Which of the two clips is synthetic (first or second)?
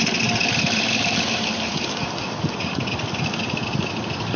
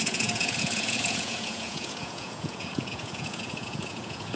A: second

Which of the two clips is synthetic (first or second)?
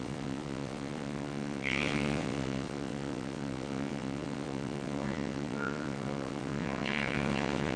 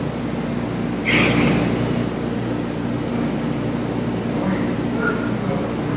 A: first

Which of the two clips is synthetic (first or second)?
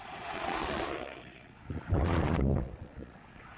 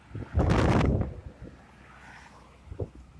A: first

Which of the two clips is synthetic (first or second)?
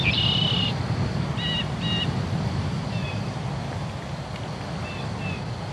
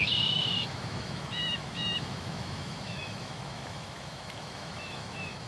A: second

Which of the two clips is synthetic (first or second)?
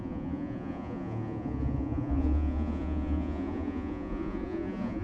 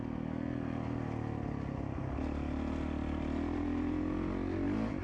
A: first